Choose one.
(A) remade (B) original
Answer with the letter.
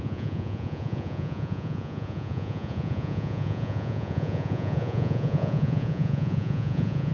A